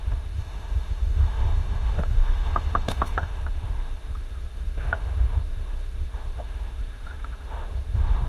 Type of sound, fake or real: fake